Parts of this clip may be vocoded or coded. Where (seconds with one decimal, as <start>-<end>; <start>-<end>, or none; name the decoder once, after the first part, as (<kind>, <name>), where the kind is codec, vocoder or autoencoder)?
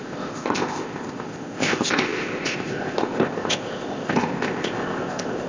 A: 0.0-5.5 (codec, ZipCodec)